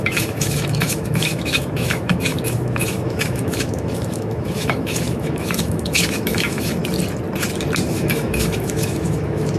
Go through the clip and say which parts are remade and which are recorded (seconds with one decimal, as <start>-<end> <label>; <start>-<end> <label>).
0.0-6.8 remade; 6.8-7.9 recorded; 7.9-9.6 remade